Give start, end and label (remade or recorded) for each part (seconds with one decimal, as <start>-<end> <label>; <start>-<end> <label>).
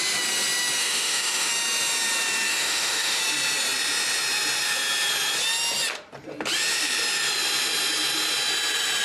0.0-0.8 recorded; 0.8-1.5 remade; 1.5-2.5 recorded; 2.5-3.2 remade; 3.2-9.0 recorded